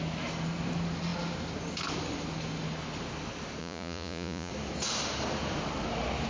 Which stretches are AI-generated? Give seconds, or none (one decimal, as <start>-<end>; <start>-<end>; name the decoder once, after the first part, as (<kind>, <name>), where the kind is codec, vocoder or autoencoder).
3.6-4.5 (vocoder, Vocos)